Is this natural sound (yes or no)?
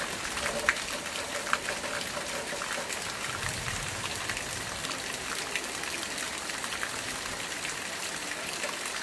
yes